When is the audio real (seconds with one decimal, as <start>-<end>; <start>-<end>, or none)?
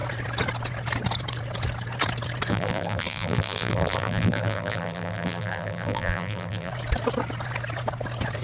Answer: 0.0-2.5; 6.7-8.4